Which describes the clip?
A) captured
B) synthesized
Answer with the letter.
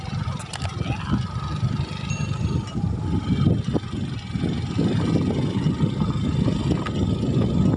A